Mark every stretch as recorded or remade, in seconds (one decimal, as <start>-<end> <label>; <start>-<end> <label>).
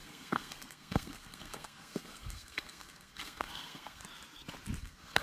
0.0-4.0 remade; 4.0-4.8 recorded; 4.8-5.2 remade